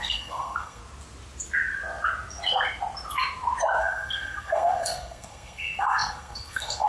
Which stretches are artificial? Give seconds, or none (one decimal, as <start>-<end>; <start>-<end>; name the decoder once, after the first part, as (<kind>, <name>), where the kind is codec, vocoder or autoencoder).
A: 0.0-0.8 (codec, SNAC); 3.8-6.9